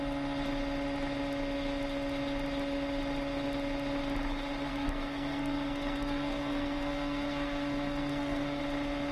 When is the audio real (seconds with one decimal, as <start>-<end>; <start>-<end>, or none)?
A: 0.0-4.7; 8.6-9.1